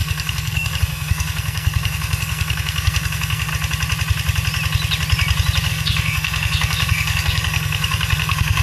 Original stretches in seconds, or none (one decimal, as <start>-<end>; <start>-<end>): 3.5-5.7